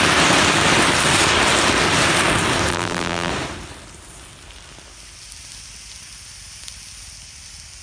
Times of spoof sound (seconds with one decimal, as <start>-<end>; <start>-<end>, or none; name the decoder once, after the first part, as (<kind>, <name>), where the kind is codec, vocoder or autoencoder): 2.7-3.3 (vocoder, BigVGAN v2)